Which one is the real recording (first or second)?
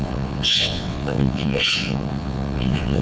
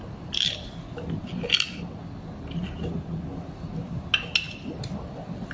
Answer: second